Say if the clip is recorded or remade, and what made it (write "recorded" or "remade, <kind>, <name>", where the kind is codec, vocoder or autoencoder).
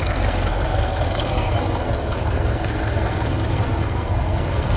remade, codec, SNAC